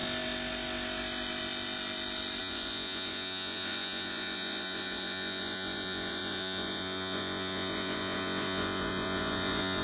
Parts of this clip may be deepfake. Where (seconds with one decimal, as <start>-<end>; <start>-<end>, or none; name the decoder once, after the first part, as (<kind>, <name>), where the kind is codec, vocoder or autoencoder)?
2.4-9.8 (vocoder, Vocos)